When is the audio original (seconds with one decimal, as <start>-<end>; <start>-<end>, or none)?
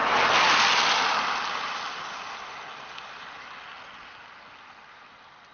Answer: 0.0-5.5